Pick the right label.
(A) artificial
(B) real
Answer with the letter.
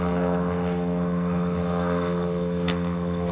A